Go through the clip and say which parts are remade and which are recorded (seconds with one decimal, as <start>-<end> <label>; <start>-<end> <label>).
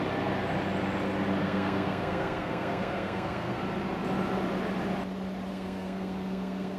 0.0-1.4 recorded; 1.4-3.6 remade; 3.6-5.5 recorded; 5.5-6.8 remade